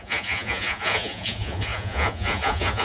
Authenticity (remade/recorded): remade